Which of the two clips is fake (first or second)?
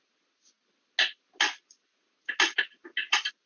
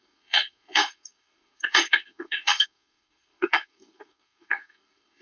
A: second